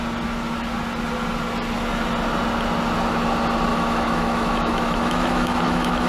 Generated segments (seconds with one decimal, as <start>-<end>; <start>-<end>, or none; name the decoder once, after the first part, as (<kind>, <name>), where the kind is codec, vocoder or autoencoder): 3.7-6.1 (autoencoder, DAC-VAE)